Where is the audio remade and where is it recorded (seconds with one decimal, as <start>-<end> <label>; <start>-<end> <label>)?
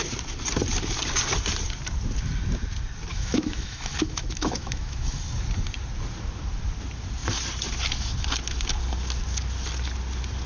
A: 0.0-3.1 recorded; 3.1-5.2 remade; 5.2-10.5 recorded